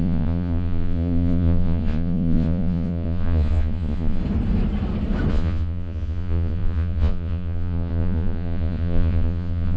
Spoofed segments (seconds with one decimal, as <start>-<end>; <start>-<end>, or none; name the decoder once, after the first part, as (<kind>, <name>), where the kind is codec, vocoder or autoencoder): 0.0-4.2 (vocoder, Vocos); 5.3-9.8